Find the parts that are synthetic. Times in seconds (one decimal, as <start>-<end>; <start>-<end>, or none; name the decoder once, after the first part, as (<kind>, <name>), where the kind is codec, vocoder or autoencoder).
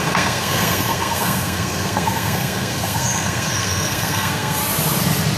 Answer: 0.0-4.6 (codec, SNAC)